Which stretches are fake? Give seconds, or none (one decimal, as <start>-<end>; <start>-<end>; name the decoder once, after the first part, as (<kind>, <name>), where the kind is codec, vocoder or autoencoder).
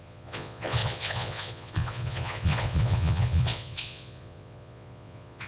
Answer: 0.0-5.5 (vocoder, Vocos)